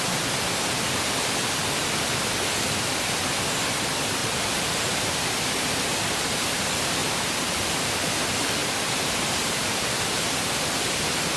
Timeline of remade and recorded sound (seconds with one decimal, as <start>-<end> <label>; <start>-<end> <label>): 0.0-4.2 recorded; 4.2-6.6 remade; 6.6-7.0 recorded; 7.0-8.1 remade; 8.1-8.6 recorded; 8.6-9.9 remade; 9.9-11.4 recorded